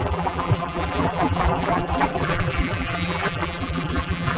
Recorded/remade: remade